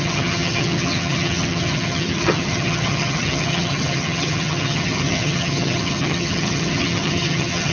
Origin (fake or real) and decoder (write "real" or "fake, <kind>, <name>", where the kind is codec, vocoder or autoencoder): fake, vocoder, HiFi-GAN